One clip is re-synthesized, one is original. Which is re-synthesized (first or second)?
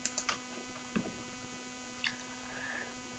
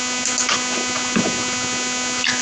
first